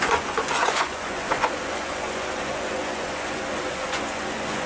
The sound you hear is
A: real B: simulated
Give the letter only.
B